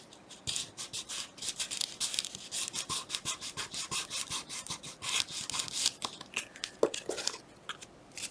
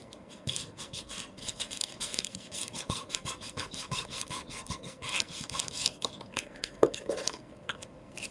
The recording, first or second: first